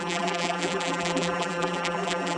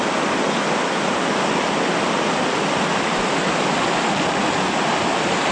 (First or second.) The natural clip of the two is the second